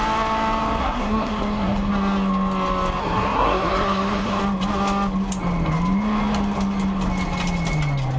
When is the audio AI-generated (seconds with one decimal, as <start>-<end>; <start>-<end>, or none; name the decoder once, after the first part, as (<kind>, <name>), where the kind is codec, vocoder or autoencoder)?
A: 0.8-1.9 (codec, SNAC); 3.0-4.4